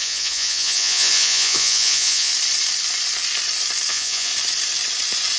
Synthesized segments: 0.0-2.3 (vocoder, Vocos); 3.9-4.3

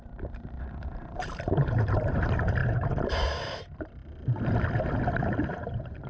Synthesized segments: 0.0-4.0 (vocoder, BigVGAN v2); 5.2-6.1

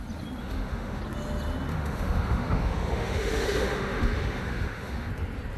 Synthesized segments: 0.4-1.0 (autoencoder, DAC-VAE); 1.7-5.1

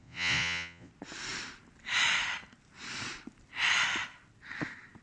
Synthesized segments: 0.0-0.9 (vocoder, Vocos)

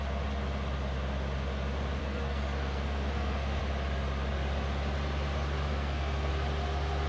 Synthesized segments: 2.0-3.6 (codec, SNAC); 5.7-6.3

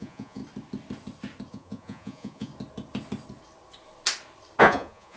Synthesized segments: 0.0-0.4 (vocoder, Vocos); 1.5-2.5; 4.6-5.2

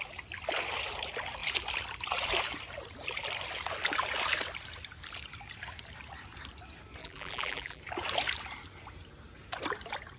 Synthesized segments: 7.0-7.8 (vocoder, BigVGAN v2)